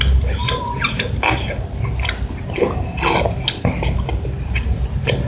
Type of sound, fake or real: real